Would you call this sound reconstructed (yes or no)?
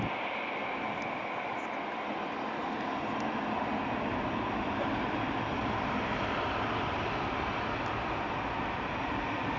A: no